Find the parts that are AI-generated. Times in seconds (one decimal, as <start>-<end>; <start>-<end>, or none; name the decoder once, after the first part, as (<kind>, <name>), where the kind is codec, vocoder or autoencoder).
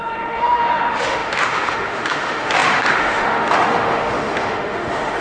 0.0-5.2 (autoencoder, DAC-VAE)